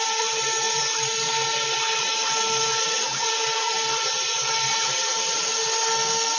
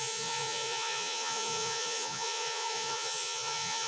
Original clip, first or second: first